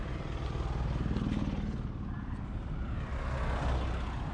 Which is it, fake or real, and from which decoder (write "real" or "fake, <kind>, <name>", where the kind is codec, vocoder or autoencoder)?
real